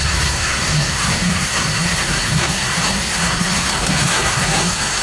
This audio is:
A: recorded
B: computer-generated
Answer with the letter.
B